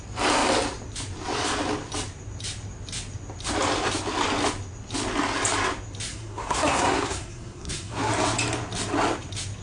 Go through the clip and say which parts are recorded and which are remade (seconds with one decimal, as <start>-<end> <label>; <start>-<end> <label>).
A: 0.0-6.1 recorded; 6.1-8.1 remade; 8.1-9.6 recorded